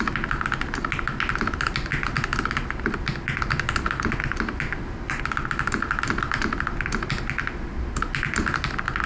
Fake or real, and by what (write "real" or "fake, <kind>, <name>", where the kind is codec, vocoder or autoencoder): real